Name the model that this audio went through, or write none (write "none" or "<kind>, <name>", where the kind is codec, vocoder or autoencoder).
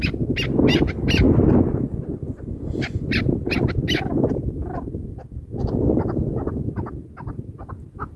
none